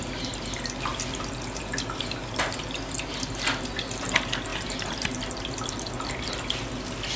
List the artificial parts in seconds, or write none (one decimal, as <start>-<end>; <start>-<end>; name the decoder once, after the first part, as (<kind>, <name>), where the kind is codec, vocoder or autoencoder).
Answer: none